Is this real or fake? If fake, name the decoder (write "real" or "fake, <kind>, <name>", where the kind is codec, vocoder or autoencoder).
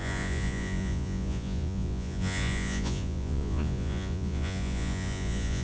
fake, vocoder, Vocos